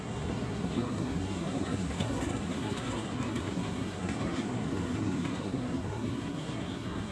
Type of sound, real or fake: fake